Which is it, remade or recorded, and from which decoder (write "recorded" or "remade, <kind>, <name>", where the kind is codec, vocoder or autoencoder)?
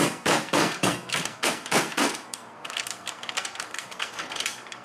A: remade, codec, SNAC